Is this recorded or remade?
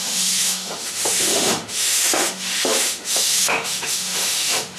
remade